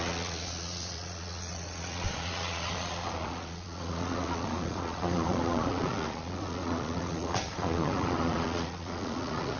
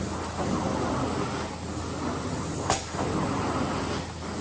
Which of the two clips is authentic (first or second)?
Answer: second